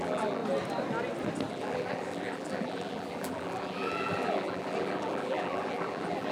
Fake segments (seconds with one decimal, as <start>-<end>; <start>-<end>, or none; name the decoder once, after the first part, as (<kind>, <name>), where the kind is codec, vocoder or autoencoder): 0.0-0.4 (vocoder, BigVGAN v2); 1.5-6.3